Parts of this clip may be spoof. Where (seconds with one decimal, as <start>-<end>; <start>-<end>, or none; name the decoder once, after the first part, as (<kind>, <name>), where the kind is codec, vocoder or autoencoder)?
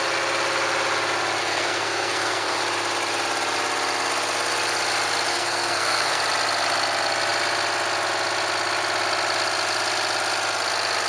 1.4-2.6 (codec, SNAC); 5.3-6.2